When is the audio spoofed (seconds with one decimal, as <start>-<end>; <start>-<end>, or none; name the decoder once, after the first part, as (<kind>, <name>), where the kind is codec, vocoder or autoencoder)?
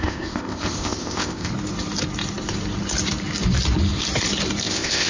0.0-1.5 (codec, ZipCodec); 4.6-5.1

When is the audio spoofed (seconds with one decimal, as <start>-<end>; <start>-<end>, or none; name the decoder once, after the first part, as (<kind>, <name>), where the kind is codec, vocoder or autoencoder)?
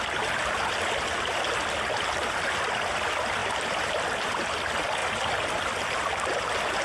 3.4-4.3 (vocoder, BigVGAN v2); 5.0-5.9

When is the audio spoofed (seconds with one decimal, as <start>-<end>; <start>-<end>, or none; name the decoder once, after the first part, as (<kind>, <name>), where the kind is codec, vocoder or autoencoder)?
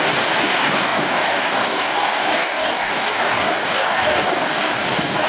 0.0-5.3 (codec, DAC)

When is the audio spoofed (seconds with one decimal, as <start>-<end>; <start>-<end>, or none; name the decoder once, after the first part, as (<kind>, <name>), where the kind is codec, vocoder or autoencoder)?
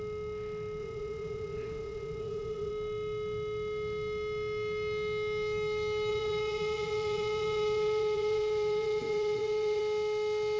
0.8-2.7 (vocoder, Vocos); 6.1-9.8